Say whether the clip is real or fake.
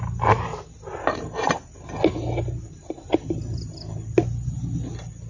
real